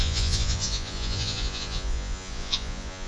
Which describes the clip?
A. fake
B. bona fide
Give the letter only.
A